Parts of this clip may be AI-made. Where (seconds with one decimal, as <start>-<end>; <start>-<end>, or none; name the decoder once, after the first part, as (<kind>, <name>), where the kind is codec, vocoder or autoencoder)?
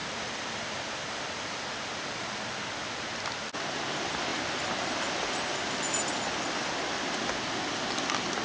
none